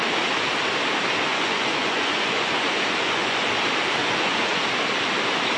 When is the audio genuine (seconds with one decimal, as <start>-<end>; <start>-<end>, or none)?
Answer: 0.0-1.3; 3.5-4.0; 4.6-5.6